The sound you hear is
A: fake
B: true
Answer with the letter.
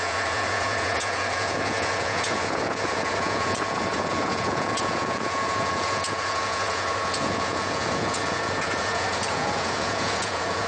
A